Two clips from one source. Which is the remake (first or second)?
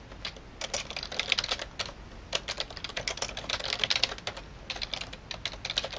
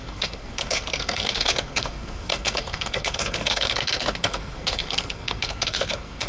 second